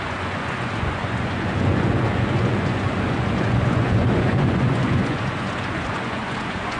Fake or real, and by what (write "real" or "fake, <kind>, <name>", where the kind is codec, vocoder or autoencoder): fake, vocoder, Vocos